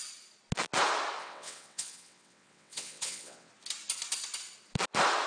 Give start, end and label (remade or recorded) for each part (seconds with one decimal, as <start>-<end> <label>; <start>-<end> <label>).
0.0-1.2 recorded; 1.2-3.5 remade; 3.5-5.3 recorded